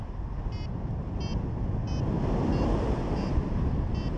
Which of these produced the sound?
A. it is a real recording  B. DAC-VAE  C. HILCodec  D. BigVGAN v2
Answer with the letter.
A